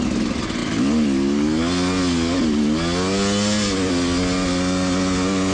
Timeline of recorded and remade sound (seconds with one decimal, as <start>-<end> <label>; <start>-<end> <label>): 0.0-5.5 recorded